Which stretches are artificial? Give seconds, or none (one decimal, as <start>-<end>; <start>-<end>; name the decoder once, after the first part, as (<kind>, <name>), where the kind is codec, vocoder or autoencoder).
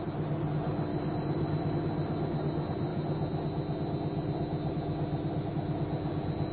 0.9-1.7 (vocoder, BigVGAN v2)